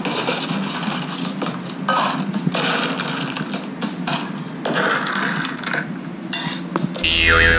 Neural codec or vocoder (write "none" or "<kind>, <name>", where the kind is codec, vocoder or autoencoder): none